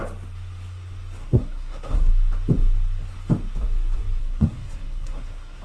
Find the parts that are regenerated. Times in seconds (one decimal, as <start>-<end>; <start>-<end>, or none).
1.2-2.1; 4.2-5.6